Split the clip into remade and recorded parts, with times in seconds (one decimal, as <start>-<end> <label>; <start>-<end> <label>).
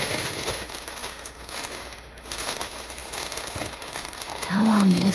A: 0.0-5.1 remade